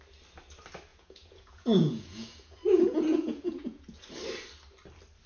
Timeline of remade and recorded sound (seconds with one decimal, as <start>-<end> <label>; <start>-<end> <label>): 0.0-0.9 recorded; 0.9-4.1 remade; 4.1-5.3 recorded